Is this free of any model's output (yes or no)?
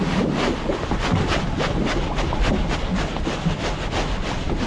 yes